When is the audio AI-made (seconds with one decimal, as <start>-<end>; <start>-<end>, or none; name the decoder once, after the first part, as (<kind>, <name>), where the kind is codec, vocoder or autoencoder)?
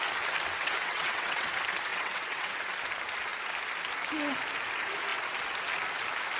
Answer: 0.6-1.5 (vocoder, WaveNeXt); 1.9-2.5